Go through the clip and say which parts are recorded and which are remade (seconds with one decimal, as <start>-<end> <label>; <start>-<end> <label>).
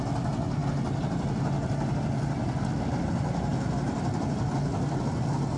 0.0-5.6 recorded